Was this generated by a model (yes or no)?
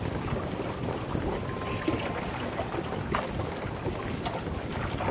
no